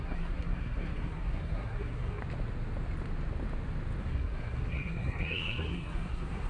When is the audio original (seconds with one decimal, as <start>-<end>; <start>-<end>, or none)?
2.2-4.0